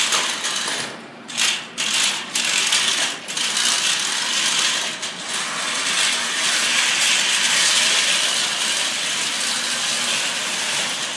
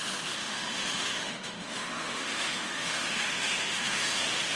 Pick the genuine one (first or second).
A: first